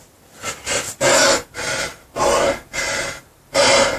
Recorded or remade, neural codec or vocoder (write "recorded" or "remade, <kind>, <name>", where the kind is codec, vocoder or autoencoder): recorded